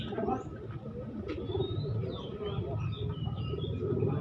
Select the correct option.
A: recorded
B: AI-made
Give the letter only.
A